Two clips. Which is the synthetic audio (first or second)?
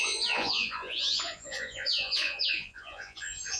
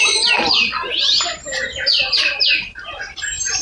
first